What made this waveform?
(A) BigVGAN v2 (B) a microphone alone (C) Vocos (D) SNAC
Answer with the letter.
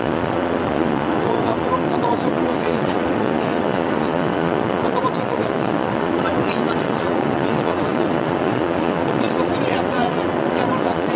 C